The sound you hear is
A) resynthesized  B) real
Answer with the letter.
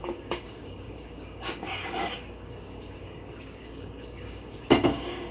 A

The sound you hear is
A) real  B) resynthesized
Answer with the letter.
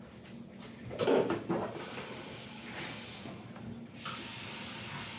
A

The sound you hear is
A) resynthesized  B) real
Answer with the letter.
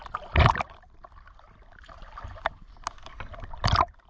B